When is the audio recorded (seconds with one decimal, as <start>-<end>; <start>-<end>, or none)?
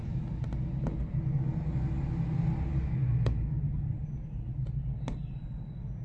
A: 0.0-6.0